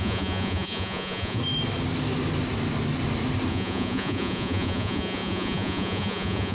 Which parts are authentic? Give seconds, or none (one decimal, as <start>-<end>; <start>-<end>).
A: 1.4-3.5